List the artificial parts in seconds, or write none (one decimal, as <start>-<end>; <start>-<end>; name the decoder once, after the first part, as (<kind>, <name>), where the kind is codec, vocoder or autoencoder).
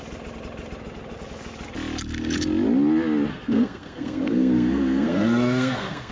3.3-6.1 (codec, SNAC)